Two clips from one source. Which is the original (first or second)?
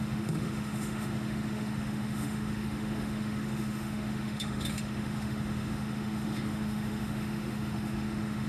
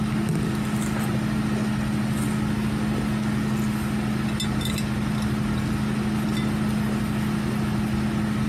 second